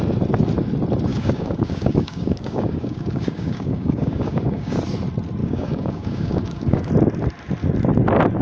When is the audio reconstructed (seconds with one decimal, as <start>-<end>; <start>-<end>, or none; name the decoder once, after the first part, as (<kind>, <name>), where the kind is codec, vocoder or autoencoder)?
1.1-4.8 (codec, DAC); 5.4-6.9